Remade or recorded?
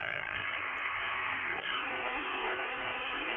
remade